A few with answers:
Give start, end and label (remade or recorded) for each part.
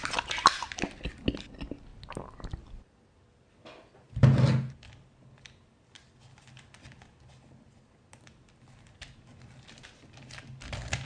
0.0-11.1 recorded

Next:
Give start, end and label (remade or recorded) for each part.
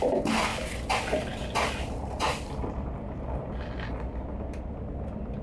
0.0-5.4 recorded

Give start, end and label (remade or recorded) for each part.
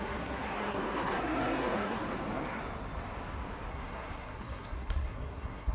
0.0-2.0 remade; 2.0-3.7 recorded; 3.7-5.7 remade